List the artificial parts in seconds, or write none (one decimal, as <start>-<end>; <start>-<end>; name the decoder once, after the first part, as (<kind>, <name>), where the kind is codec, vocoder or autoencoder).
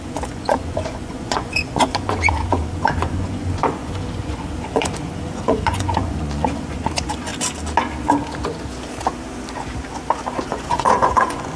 0.0-7.3 (vocoder, Vocos); 10.5-11.6